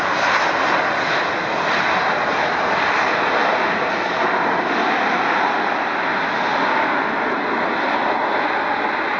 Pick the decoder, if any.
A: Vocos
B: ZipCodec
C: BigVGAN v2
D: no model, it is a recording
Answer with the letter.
D